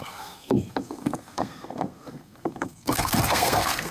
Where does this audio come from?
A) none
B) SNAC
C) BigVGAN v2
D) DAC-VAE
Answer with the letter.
B